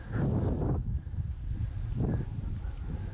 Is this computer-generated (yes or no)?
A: no